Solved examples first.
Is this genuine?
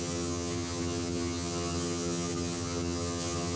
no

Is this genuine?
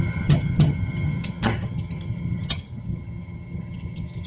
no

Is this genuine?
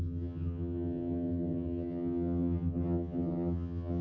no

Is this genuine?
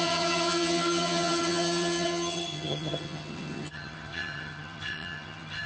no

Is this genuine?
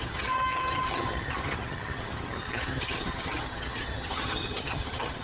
no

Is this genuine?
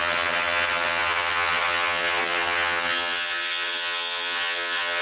no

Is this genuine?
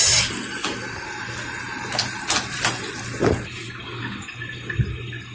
yes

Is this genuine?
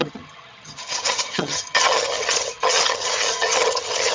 no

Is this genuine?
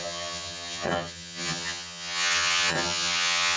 no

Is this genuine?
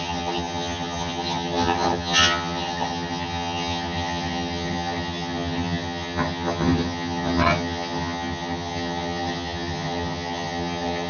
no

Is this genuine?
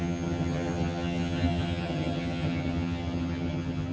no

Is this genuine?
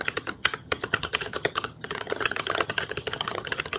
no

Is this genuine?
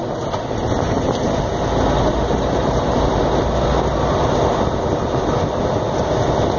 yes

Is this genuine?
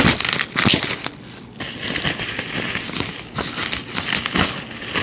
yes